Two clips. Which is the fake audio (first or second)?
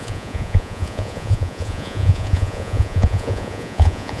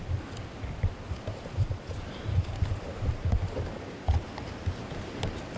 first